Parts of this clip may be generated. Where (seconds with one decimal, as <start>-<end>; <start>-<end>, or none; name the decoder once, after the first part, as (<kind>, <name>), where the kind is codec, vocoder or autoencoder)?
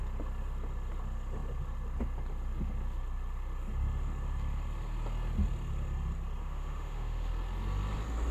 6.4-7.3 (autoencoder, DAC-VAE)